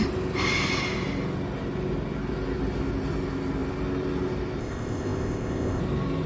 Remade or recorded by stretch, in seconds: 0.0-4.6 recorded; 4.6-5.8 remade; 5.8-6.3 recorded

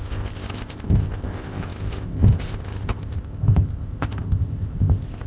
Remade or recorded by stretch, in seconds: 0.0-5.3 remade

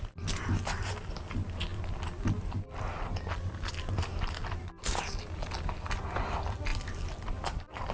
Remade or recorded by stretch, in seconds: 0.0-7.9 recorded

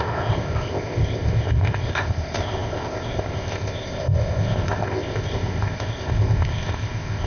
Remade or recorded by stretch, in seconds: 0.0-7.3 remade